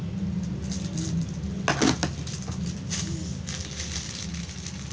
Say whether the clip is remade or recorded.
recorded